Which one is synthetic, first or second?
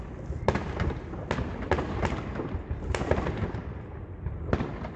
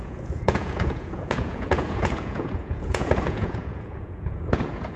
second